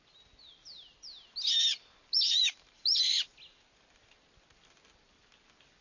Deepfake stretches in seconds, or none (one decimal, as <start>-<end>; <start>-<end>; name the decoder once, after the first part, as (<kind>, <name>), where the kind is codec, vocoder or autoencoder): 1.7-3.2 (vocoder, BigVGAN v2)